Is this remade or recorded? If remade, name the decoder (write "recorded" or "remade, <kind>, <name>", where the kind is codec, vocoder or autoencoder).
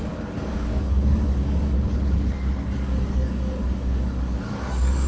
remade, codec, DAC